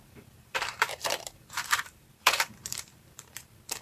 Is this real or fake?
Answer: fake